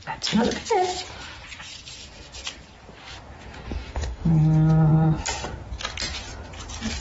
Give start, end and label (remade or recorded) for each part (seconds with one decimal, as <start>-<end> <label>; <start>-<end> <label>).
0.0-3.8 recorded; 3.8-4.3 remade; 4.3-7.0 recorded